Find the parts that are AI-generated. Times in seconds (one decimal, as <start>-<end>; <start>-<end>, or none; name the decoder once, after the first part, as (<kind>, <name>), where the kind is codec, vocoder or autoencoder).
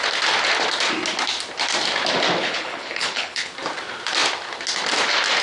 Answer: 2.4-3.5 (codec, HILCodec)